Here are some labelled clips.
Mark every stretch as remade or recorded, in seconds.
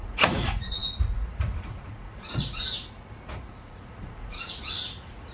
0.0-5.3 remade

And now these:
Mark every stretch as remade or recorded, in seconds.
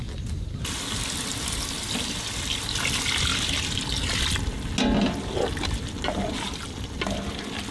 0.0-7.7 recorded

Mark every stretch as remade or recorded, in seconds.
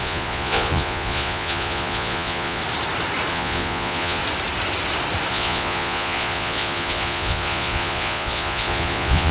0.0-2.6 remade; 2.6-3.3 recorded; 3.3-4.2 remade; 4.2-5.3 recorded; 5.3-9.3 remade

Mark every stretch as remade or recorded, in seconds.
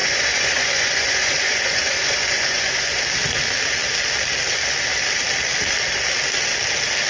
0.0-3.0 remade; 3.0-7.1 recorded